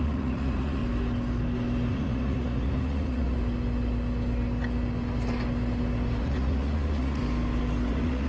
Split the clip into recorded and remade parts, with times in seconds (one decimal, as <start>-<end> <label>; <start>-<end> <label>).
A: 0.0-0.8 remade; 0.8-1.9 recorded; 1.9-3.4 remade; 3.4-6.2 recorded; 6.2-7.2 remade; 7.2-7.9 recorded; 7.9-8.3 remade